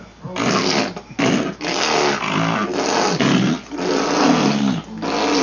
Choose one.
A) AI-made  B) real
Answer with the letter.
B